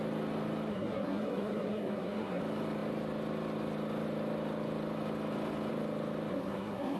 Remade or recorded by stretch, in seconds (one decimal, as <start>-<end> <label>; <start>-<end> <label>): 0.0-0.7 recorded; 0.7-2.4 remade; 2.4-6.3 recorded; 6.3-7.0 remade